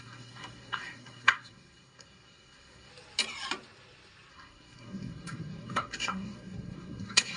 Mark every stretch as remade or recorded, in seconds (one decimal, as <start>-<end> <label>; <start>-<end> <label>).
0.0-2.9 remade; 2.9-4.3 recorded; 4.3-7.4 remade